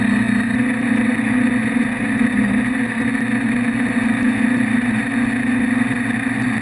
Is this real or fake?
real